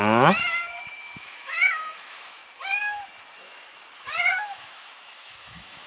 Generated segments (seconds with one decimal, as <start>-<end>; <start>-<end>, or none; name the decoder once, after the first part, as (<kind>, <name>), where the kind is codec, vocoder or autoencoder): 0.0-2.4 (autoencoder, DAC-VAE); 4.4-5.9